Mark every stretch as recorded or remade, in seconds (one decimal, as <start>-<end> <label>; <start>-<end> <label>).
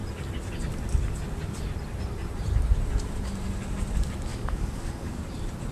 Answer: 0.0-4.3 recorded; 4.3-5.2 remade; 5.2-5.7 recorded